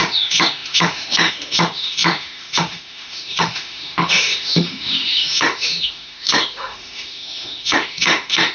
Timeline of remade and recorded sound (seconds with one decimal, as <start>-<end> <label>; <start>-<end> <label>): 0.0-8.5 remade